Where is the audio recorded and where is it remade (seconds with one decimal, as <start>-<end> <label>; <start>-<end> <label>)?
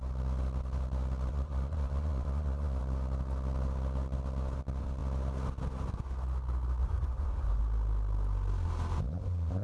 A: 0.0-1.3 recorded; 1.3-2.8 remade; 2.8-6.8 recorded; 6.8-7.6 remade; 7.6-9.6 recorded